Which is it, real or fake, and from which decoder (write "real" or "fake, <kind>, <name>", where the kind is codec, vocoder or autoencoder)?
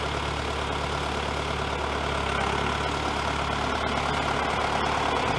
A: real